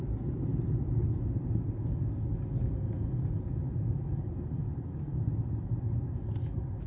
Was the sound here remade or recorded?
recorded